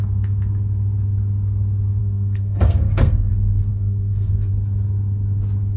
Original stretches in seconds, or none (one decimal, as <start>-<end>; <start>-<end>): 0.0-2.0; 3.3-3.7; 4.5-5.8